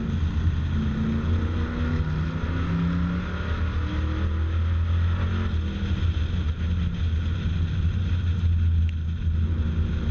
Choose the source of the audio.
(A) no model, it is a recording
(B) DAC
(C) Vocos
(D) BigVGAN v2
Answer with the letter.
A